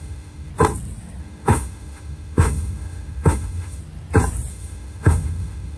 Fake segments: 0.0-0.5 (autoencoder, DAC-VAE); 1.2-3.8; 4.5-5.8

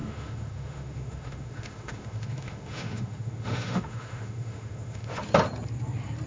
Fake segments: 0.0-5.2 (autoencoder, DAC-VAE)

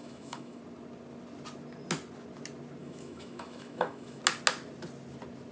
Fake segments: 0.0-0.6 (autoencoder, DAC-VAE); 2.8-4.2

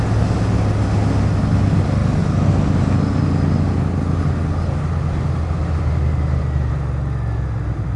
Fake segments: none

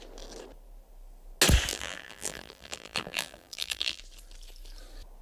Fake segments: 1.7-4.0 (vocoder, BigVGAN v2)

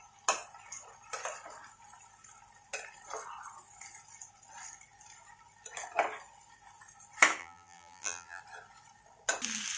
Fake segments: 7.4-8.4 (vocoder, BigVGAN v2)

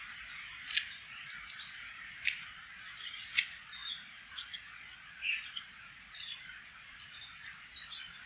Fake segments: none

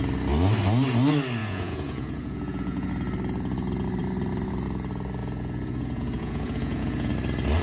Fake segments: 1.4-2.9 (vocoder, Vocos); 5.2-7.1